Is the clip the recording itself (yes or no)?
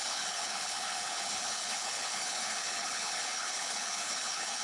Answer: no